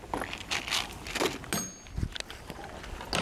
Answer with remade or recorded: recorded